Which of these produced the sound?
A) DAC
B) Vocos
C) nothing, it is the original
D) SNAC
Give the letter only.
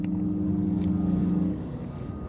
A